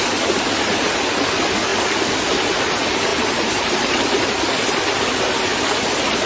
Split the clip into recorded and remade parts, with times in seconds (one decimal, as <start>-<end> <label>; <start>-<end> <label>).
0.0-3.1 recorded; 3.1-4.2 remade; 4.2-6.3 recorded